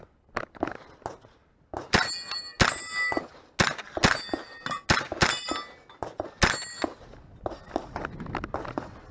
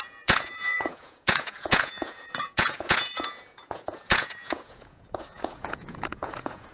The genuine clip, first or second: first